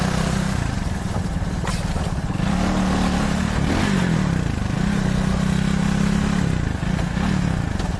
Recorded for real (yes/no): yes